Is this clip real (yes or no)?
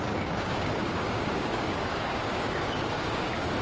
no